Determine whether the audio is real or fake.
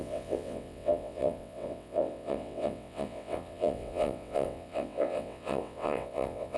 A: fake